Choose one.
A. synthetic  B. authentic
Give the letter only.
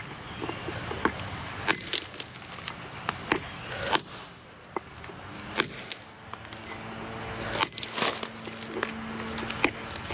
B